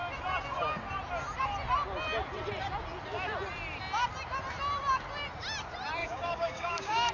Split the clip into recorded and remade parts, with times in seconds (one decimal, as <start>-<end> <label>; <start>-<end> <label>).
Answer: 0.0-6.0 recorded; 6.0-7.1 remade